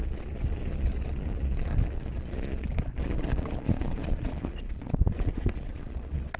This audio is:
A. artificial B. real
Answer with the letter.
A